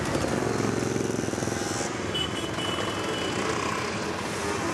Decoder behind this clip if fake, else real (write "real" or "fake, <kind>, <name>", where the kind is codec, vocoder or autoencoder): real